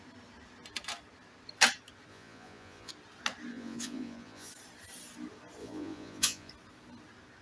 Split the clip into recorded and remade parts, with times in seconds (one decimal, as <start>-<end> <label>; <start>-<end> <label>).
0.0-2.1 recorded; 2.1-2.9 remade; 2.9-3.5 recorded; 3.5-4.5 remade; 4.5-5.6 recorded; 5.6-6.5 remade; 6.5-7.4 recorded